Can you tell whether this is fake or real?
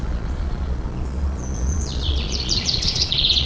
fake